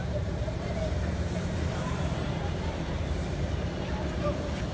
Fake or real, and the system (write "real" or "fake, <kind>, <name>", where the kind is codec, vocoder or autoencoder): fake, vocoder, BigVGAN v2